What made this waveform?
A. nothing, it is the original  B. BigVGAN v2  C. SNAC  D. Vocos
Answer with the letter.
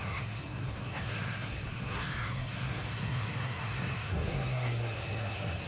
C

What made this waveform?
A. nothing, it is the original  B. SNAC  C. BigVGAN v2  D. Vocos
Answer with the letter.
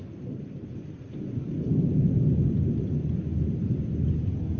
A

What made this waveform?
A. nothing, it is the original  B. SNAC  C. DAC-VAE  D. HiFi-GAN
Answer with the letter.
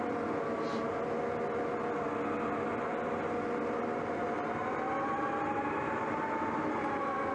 A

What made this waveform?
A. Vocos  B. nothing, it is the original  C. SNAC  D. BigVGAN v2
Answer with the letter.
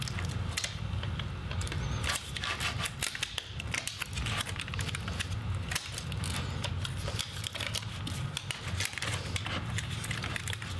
B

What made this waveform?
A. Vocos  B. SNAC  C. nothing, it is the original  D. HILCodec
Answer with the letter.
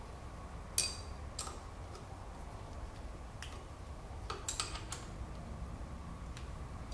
C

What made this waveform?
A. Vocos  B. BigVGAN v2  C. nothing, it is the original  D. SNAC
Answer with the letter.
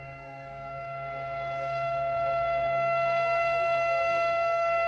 D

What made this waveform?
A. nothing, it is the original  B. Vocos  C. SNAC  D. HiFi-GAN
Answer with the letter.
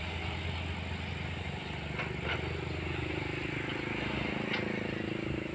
A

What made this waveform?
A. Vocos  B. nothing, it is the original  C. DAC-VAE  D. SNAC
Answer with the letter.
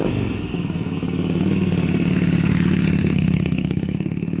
D